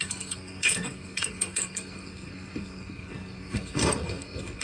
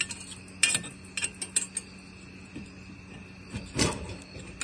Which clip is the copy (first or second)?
first